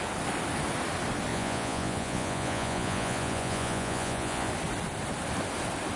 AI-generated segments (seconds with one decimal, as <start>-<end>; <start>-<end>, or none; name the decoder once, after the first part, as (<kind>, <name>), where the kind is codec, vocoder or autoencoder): 1.3-4.5 (vocoder, Vocos)